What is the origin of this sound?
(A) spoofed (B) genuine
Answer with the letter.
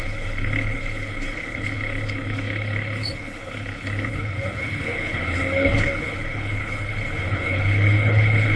A